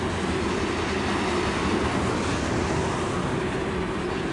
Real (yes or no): yes